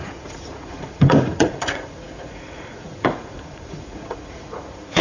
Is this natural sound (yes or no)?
no